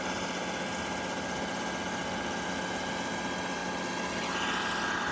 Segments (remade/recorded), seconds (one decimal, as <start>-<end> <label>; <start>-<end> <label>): 0.0-5.1 recorded